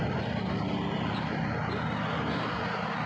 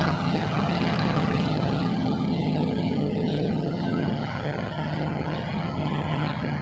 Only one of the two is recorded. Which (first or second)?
first